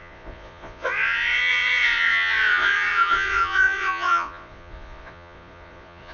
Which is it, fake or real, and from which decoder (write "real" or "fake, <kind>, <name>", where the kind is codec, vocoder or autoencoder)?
fake, vocoder, Vocos